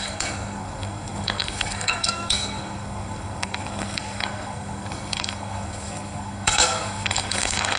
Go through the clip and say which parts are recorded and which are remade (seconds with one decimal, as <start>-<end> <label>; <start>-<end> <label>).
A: 0.0-7.8 remade